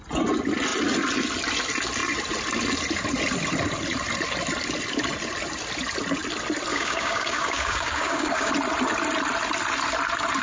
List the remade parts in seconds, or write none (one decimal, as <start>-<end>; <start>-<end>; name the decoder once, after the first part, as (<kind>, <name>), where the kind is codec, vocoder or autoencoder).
6.7-8.5 (codec, DAC)